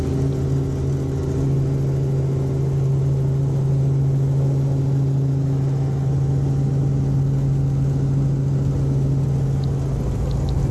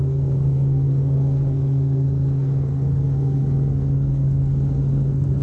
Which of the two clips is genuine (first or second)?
first